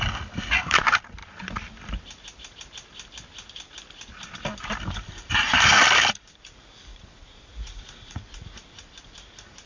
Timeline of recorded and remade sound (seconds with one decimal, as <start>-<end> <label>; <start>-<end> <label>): 0.0-6.9 recorded; 6.9-8.2 remade; 8.2-9.7 recorded